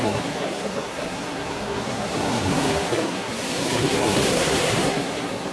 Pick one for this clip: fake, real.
fake